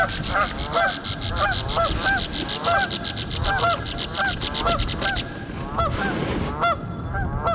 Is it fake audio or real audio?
real